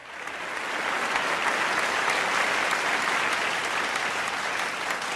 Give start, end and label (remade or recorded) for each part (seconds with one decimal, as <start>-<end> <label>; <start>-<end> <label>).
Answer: 0.0-5.2 recorded